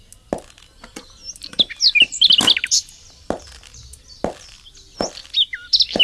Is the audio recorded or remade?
recorded